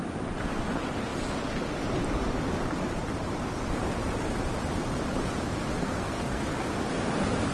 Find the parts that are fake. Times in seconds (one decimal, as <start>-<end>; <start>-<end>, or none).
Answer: 5.8-6.6